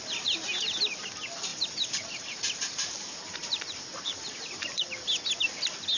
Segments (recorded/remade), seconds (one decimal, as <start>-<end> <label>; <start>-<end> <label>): 0.0-1.5 recorded; 1.5-4.9 remade; 4.9-6.0 recorded